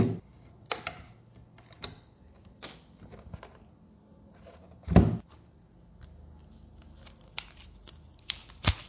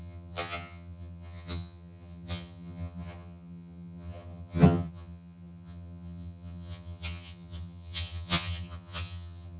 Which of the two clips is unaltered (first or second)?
first